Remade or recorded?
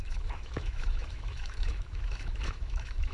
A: remade